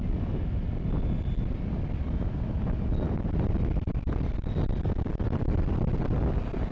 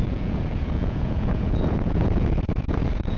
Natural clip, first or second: first